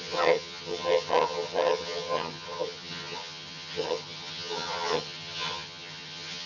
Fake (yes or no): yes